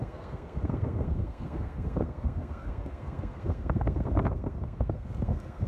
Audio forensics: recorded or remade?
remade